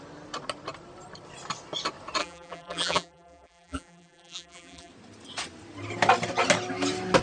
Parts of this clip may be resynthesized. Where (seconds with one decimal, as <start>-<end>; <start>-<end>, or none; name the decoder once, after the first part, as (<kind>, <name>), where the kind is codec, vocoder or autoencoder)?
2.2-4.9 (vocoder, BigVGAN v2)